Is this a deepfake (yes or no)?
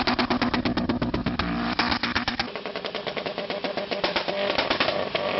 no